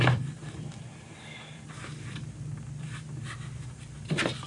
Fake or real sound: fake